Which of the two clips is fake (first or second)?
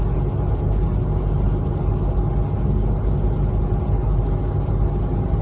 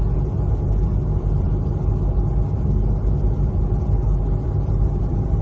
second